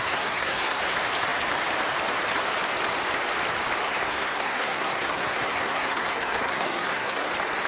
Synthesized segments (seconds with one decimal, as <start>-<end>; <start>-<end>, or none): 0.0-0.8; 3.8-7.3